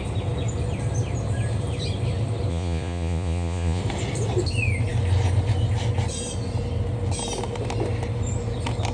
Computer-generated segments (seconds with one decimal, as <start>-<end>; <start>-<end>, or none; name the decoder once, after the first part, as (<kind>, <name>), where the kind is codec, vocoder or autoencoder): 2.5-3.8 (vocoder, Vocos)